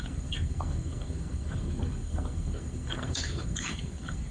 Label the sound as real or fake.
fake